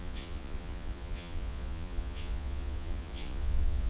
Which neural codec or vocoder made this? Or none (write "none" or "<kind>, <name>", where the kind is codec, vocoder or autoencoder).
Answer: vocoder, Vocos